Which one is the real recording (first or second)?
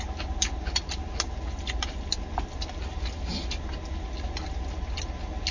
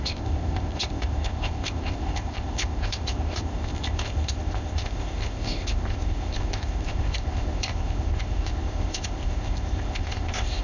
first